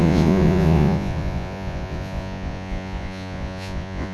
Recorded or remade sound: remade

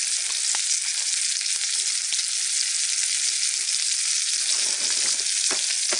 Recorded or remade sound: recorded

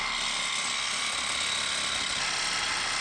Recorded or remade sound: recorded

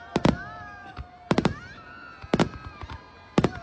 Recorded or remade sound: recorded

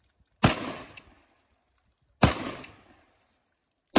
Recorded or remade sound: recorded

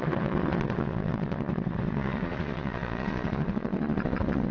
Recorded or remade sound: remade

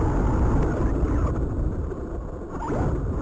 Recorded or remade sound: recorded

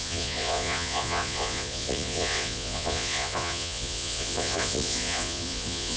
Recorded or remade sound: remade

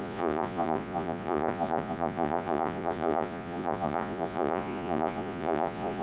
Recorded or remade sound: remade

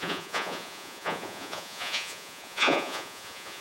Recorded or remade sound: remade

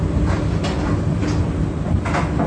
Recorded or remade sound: recorded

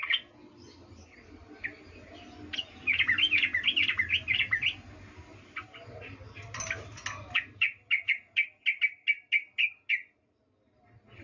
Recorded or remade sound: recorded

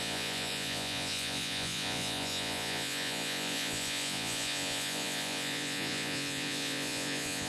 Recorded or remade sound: remade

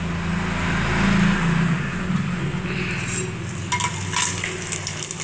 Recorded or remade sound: recorded